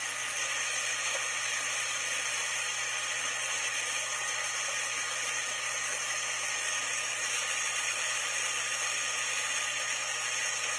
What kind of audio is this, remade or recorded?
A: recorded